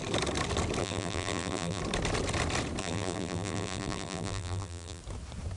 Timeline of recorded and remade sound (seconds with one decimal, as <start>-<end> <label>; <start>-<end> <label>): 0.0-0.8 recorded; 0.8-1.8 remade; 1.8-2.8 recorded; 2.8-5.0 remade; 5.0-5.6 recorded